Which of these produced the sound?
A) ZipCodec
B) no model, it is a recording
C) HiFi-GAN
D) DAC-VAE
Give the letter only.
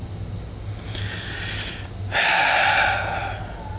B